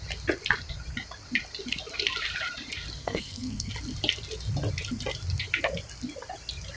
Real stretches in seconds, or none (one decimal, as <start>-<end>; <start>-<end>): 0.0-3.0; 3.7-6.8